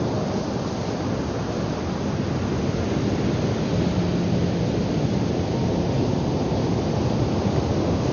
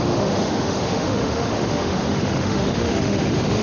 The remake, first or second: second